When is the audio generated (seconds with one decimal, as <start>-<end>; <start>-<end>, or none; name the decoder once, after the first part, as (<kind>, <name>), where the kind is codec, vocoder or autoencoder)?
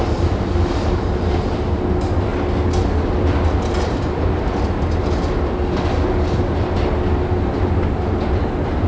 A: none